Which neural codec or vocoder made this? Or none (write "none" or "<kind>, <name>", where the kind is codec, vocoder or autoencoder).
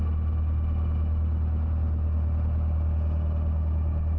none